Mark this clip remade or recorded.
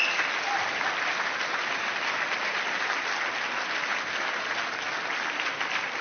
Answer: recorded